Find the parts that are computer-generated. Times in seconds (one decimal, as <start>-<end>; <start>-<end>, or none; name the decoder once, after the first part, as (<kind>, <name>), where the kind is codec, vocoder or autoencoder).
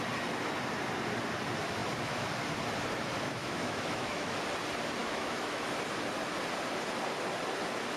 3.4-4.4 (autoencoder, DAC-VAE); 5.0-5.6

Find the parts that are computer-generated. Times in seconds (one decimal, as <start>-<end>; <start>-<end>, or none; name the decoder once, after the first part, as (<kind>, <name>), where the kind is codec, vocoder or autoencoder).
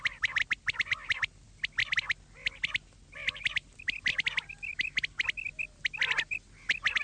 none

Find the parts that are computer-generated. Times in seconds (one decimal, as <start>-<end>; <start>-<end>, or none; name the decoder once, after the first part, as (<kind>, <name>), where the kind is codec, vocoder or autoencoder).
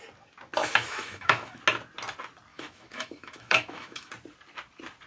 0.6-1.6 (autoencoder, DAC-VAE); 2.5-4.1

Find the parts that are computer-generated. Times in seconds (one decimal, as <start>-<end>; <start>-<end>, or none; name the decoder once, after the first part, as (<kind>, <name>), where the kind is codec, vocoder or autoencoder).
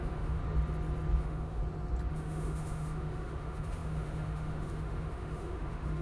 0.0-0.4 (autoencoder, DAC-VAE); 1.2-1.6; 2.1-6.0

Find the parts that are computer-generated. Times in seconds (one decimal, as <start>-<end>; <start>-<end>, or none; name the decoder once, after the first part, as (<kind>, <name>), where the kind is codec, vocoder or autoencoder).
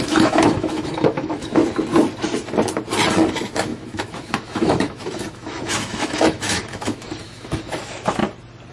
0.0-1.6 (autoencoder, DAC-VAE); 3.3-8.2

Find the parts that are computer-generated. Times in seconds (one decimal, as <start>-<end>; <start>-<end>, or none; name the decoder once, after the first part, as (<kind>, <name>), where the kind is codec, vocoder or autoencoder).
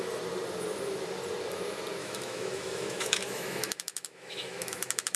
2.0-5.2 (autoencoder, DAC-VAE)